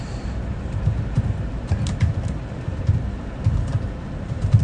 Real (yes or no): no